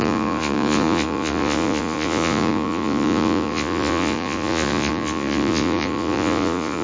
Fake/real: fake